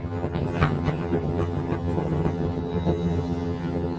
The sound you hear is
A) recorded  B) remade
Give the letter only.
B